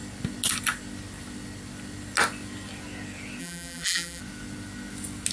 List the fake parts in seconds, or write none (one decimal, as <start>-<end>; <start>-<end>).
3.4-4.2

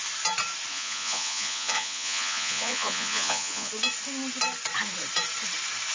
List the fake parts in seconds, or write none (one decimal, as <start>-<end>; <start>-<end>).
0.7-3.7